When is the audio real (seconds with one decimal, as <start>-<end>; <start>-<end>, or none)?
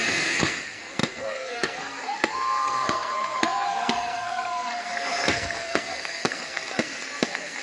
none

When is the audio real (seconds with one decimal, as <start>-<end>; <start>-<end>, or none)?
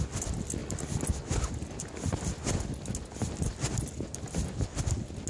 0.0-5.3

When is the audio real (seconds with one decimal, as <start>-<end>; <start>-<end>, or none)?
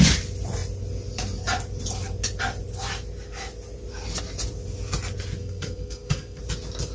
0.0-5.4; 6.4-6.9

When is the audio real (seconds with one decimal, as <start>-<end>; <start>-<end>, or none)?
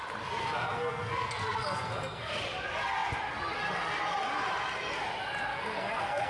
0.0-0.4; 2.4-5.5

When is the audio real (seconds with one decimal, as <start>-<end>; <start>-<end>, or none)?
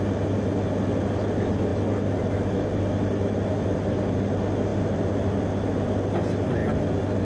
0.0-7.2